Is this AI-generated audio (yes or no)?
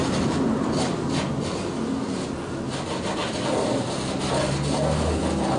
no